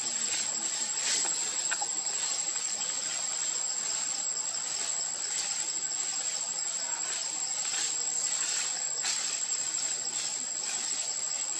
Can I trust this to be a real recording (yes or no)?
yes